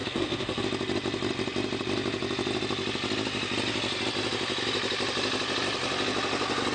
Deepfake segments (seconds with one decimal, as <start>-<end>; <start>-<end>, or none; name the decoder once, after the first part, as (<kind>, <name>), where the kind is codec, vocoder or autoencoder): 0.0-0.6 (codec, SNAC)